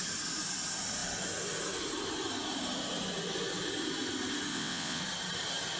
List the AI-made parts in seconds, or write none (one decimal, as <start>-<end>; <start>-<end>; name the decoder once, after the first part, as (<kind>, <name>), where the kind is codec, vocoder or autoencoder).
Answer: 4.5-5.0 (vocoder, WaveNeXt)